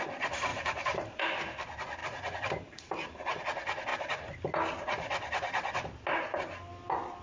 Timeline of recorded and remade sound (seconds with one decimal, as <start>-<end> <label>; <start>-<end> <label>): 0.0-0.5 recorded; 0.5-1.2 remade; 1.2-2.0 recorded; 2.0-3.4 remade; 3.4-3.9 recorded; 3.9-4.5 remade; 4.5-7.2 recorded